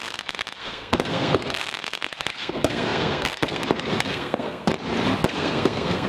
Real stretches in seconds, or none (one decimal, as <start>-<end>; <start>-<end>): 4.7-5.3